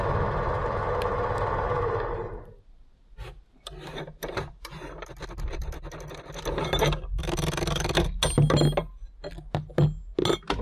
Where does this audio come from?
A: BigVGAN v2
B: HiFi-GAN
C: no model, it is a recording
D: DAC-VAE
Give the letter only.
C